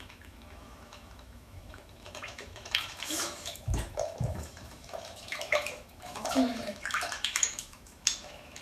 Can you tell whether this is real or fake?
fake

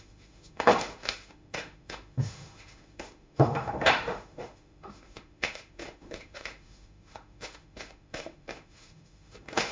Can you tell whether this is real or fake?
fake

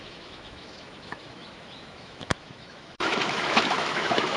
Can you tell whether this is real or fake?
fake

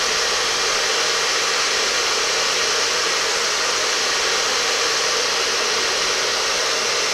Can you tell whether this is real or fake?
real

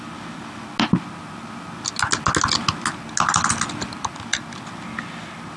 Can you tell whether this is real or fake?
real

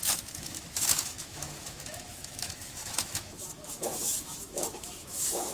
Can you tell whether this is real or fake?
fake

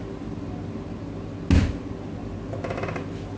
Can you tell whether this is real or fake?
real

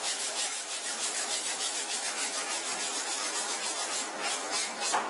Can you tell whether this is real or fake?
fake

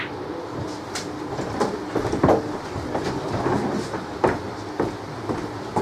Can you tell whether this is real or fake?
real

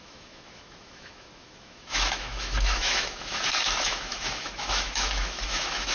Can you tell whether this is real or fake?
fake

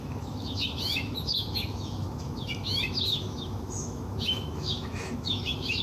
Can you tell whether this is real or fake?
fake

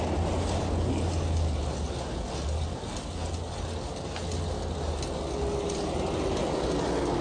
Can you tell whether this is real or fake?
real